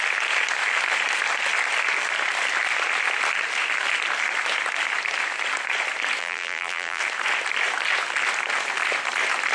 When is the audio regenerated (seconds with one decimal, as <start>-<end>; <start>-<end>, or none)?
6.2-7.0